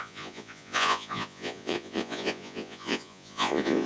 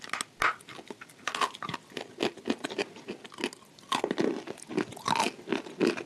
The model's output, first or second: first